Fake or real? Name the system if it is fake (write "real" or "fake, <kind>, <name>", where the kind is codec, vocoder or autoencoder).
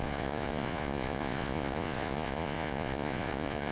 fake, vocoder, Vocos